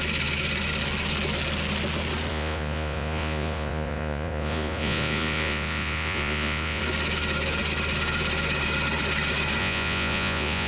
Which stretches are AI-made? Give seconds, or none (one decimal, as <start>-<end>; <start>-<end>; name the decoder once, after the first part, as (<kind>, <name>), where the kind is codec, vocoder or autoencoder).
2.3-6.8 (vocoder, Vocos); 9.6-10.7